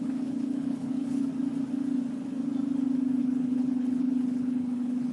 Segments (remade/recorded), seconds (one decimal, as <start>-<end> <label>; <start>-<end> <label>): 0.0-1.3 remade; 1.3-3.2 recorded; 3.2-5.1 remade